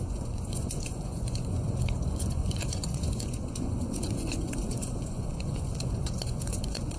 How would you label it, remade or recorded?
remade